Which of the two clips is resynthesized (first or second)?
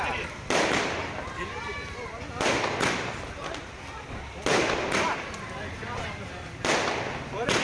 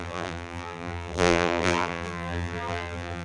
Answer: second